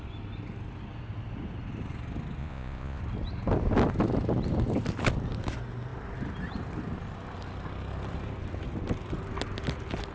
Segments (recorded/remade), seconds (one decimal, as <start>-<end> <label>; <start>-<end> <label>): 0.0-2.4 recorded; 2.4-3.0 remade; 3.0-10.1 recorded